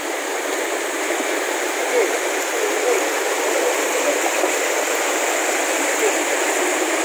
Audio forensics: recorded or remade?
recorded